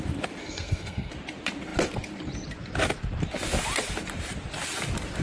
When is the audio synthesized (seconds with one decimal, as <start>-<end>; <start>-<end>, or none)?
0.4-1.1